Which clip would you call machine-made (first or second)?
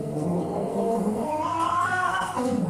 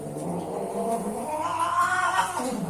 first